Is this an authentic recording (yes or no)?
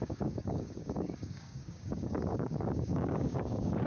no